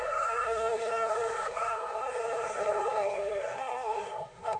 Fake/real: fake